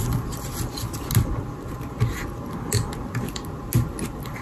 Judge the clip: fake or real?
real